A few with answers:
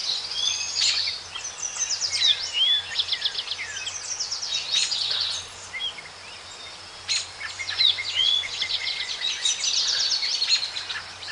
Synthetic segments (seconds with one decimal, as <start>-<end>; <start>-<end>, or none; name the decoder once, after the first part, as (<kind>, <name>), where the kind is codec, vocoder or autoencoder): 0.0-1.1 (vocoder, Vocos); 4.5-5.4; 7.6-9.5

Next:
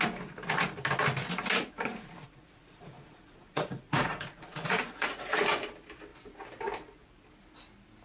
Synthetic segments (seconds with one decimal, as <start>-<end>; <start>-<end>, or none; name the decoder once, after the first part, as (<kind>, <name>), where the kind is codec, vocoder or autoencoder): 1.9-5.4 (vocoder, Vocos)

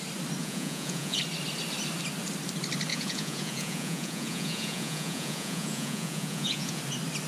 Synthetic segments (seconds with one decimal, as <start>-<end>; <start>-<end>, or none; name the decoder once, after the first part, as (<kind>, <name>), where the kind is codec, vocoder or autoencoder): 0.4-1.2 (vocoder, Vocos); 2.9-6.8

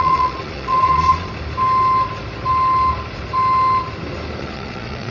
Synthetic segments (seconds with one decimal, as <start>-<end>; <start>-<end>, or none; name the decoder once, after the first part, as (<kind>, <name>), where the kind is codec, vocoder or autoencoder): 0.0-1.3 (vocoder, Vocos); 4.4-5.1